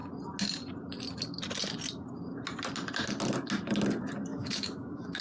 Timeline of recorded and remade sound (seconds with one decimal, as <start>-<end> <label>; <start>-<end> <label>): 0.0-4.3 recorded; 4.3-5.2 remade